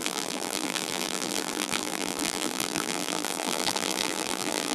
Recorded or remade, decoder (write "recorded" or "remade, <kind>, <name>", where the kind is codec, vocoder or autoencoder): remade, vocoder, BigVGAN v2